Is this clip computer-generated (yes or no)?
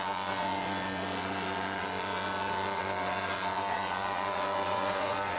yes